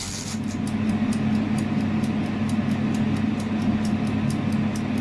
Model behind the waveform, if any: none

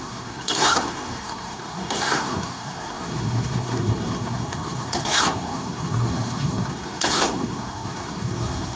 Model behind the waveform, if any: codec, SNAC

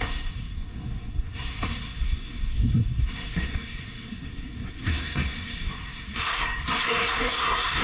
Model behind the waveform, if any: codec, SNAC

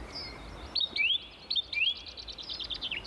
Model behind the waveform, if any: none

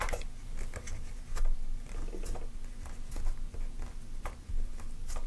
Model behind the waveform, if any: none